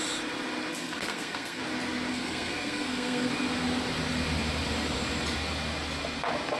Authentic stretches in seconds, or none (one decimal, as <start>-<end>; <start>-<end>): 0.0-0.7; 1.6-2.1; 3.3-6.6